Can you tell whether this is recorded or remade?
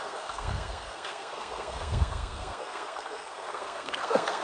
remade